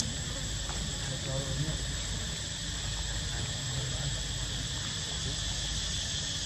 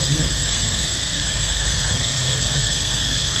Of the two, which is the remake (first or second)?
second